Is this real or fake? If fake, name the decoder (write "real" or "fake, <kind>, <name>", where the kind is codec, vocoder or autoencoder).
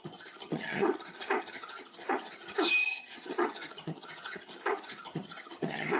fake, vocoder, HiFi-GAN